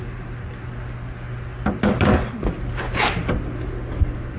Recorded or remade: recorded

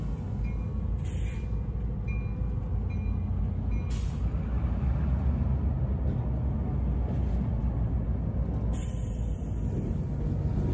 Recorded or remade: recorded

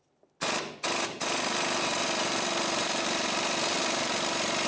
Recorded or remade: recorded